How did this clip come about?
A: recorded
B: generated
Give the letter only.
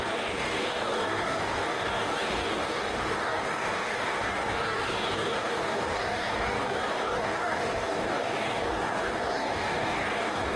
B